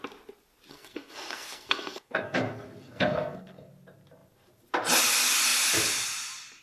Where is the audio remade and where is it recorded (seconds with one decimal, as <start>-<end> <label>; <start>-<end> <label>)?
0.0-0.7 recorded; 0.7-3.7 remade; 3.7-6.6 recorded